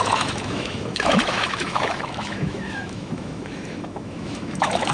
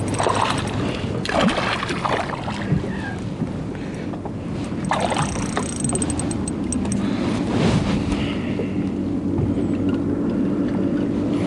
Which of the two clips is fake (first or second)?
first